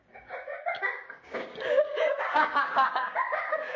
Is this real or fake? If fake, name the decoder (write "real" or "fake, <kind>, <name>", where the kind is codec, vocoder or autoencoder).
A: fake, codec, DAC